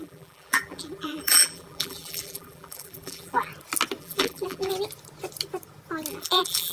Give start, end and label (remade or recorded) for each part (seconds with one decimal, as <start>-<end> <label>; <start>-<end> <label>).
0.0-3.5 remade; 3.5-4.0 recorded; 4.0-4.7 remade; 4.7-6.1 recorded; 6.1-6.7 remade